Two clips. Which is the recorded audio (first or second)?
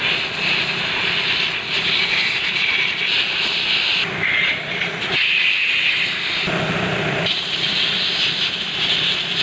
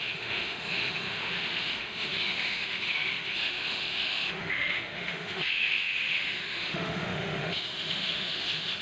first